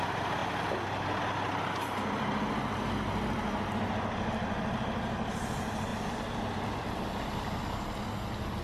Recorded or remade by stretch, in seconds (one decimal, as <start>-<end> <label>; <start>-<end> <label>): 0.0-5.9 recorded; 5.9-7.1 remade; 7.1-8.6 recorded